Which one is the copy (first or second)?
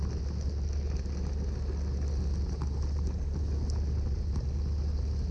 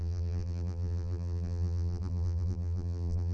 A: second